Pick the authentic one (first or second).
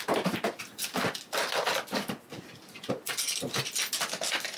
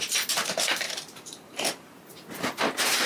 first